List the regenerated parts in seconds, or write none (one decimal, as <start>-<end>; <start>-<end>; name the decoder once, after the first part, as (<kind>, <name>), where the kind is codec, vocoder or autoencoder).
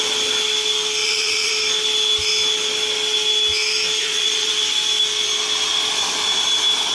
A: 1.0-1.5 (vocoder, Vocos); 4.0-4.5